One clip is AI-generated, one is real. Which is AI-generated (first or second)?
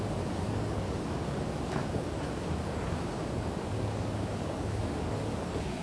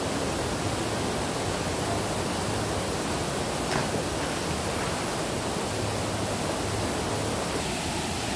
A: first